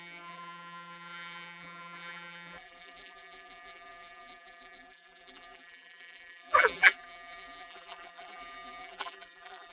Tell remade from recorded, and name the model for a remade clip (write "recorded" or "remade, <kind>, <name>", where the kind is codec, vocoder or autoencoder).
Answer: remade, vocoder, BigVGAN v2